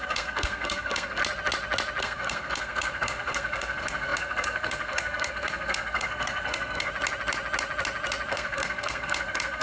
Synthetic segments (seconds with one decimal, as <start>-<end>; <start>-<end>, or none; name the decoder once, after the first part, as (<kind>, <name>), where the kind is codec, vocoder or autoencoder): 0.0-1.2 (codec, SNAC); 2.0-6.9; 8.3-9.6